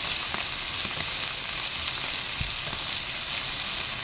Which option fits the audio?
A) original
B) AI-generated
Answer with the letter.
A